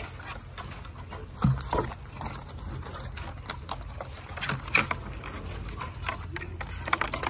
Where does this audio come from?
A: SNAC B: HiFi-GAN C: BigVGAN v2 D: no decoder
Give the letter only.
D